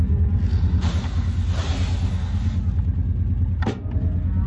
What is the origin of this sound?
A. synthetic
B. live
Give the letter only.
B